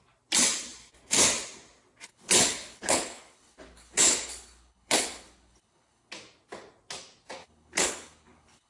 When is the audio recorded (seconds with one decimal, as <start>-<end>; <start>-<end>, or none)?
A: 0.0-2.1; 6.1-7.4